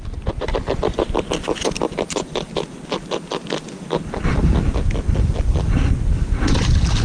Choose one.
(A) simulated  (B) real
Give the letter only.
B